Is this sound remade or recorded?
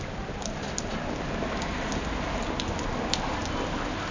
recorded